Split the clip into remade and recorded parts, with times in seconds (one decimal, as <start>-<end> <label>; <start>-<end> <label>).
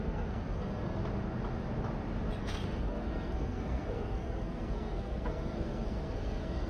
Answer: 0.0-1.0 remade; 1.0-2.4 recorded; 2.4-6.7 remade